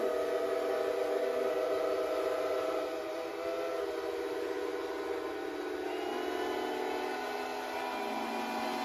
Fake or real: real